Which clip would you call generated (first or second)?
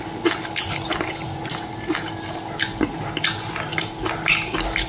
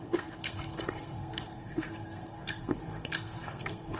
second